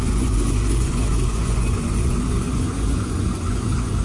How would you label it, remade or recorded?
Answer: remade